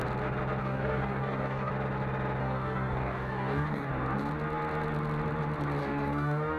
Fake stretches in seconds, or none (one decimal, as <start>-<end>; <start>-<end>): 0.6-1.7; 2.4-3.9; 5.8-6.6